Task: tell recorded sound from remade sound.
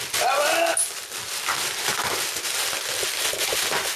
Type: recorded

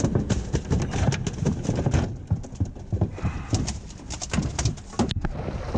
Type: recorded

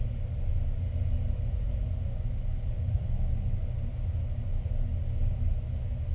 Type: recorded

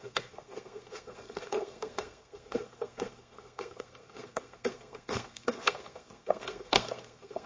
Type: remade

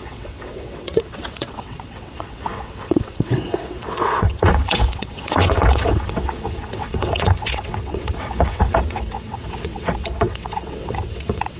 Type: remade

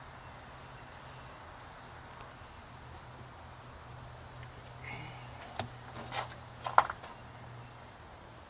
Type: recorded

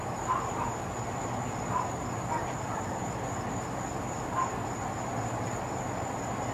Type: recorded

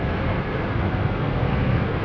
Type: remade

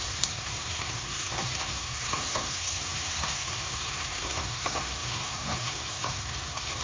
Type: remade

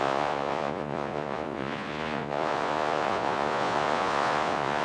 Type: remade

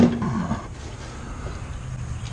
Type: recorded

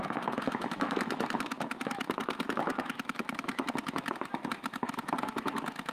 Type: remade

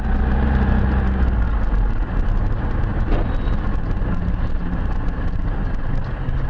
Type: recorded